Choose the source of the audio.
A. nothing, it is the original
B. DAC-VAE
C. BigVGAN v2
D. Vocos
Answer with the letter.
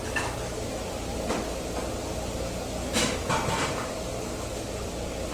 A